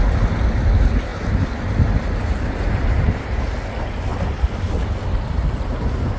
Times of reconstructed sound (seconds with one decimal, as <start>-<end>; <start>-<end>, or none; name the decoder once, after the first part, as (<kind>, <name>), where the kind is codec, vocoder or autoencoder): none